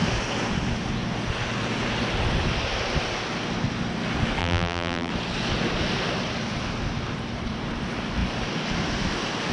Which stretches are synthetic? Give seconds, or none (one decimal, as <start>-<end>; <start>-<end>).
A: 4.4-5.1